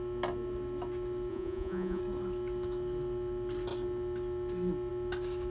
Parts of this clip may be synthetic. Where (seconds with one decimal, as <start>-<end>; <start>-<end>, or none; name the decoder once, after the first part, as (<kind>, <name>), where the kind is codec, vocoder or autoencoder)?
1.3-2.0 (vocoder, Vocos)